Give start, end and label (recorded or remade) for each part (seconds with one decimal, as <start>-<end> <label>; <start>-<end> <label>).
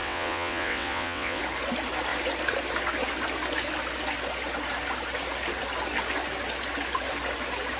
0.0-1.4 remade; 1.4-7.8 recorded